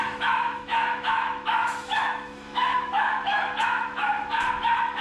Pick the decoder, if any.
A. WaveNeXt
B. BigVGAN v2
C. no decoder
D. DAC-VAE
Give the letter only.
D